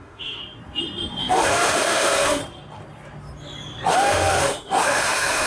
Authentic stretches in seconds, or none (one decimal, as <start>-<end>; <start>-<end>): 0.4-1.2; 2.4-3.9